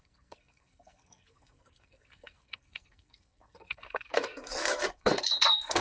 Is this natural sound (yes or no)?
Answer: no